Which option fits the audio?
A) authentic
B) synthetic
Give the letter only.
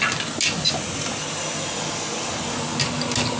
A